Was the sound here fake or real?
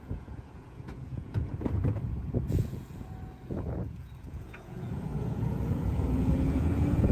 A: fake